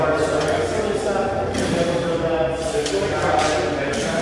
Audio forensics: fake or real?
real